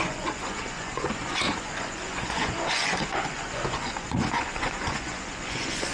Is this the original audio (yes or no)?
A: no